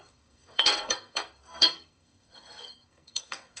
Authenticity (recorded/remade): remade